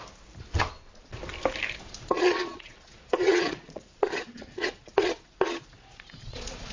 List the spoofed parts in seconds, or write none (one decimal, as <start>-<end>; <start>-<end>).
1.8-6.7